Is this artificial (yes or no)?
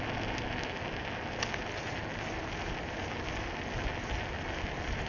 no